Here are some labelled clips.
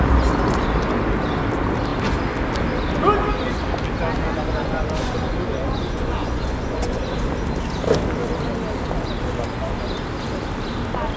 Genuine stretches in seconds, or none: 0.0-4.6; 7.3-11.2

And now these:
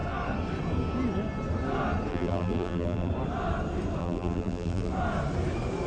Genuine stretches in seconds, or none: 0.0-2.1; 3.1-4.0; 4.9-5.9

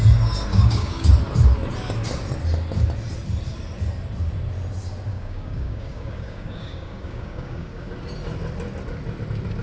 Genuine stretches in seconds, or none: 0.0-0.5; 1.1-5.1; 7.9-9.6

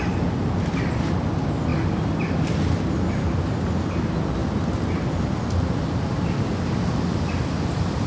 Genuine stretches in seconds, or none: 0.0-8.1

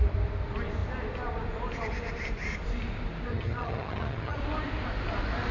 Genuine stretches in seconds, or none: 0.0-3.3; 4.4-5.5

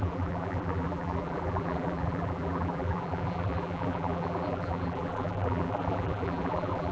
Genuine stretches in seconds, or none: none